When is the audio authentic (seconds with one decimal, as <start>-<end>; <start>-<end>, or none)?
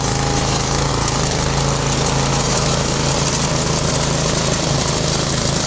0.9-2.3; 3.0-5.7